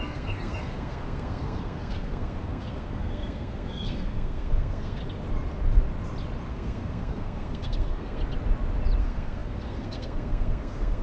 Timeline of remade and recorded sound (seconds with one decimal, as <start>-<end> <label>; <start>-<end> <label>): 0.0-5.0 remade; 5.0-6.5 recorded; 6.5-8.2 remade; 8.2-9.0 recorded; 9.0-11.0 remade